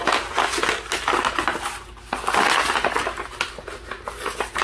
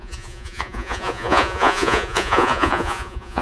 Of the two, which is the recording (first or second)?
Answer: first